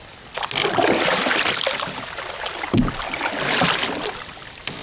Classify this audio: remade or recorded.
recorded